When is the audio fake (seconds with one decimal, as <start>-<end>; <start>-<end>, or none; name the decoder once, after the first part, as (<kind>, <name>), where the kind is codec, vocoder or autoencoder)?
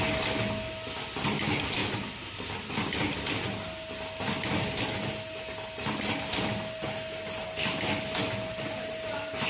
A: none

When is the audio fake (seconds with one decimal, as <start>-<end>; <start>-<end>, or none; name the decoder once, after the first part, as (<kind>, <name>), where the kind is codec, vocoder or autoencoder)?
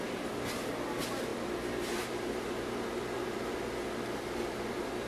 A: none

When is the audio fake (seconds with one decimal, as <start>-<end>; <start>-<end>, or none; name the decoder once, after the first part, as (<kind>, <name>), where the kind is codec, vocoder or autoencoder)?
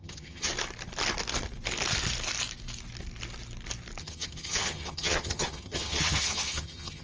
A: 0.0-0.5 (vocoder, HiFi-GAN); 4.0-7.0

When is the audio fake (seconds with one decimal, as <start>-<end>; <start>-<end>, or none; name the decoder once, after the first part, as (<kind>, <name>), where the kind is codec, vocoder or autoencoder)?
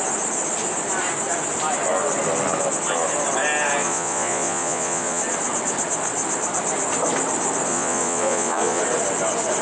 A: 3.8-5.2 (vocoder, Vocos); 7.7-8.8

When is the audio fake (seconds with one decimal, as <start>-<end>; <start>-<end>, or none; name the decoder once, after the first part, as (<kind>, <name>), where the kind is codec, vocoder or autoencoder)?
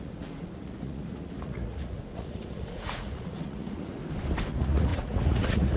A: 0.0-4.0 (vocoder, Vocos); 4.5-5.8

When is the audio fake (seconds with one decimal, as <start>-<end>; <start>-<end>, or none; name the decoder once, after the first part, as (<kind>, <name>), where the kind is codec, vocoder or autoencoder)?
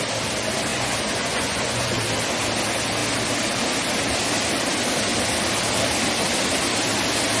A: 0.7-2.0 (vocoder, Vocos)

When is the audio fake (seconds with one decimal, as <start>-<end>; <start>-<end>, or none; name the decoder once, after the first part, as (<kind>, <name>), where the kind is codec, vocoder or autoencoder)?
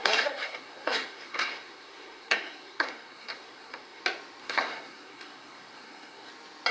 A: 0.0-4.0 (codec, SNAC); 4.4-6.3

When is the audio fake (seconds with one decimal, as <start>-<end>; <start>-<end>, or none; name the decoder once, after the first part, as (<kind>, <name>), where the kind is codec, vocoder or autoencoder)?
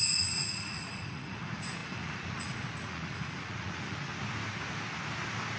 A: 0.0-4.1 (vocoder, Vocos)